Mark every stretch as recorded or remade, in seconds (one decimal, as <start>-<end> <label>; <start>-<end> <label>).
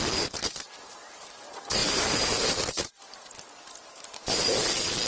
0.0-5.1 remade